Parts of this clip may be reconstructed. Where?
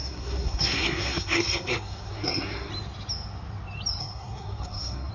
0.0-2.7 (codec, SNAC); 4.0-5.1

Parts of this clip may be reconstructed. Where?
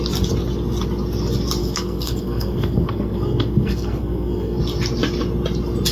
1.6-4.6 (codec, SNAC)